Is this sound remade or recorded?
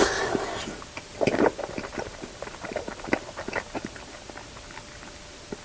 recorded